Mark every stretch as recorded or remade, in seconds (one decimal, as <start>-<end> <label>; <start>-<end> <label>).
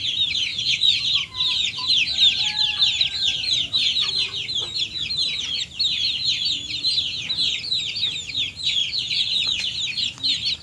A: 0.0-0.5 recorded; 0.5-1.0 remade; 1.0-8.8 recorded; 8.8-9.6 remade; 9.6-10.6 recorded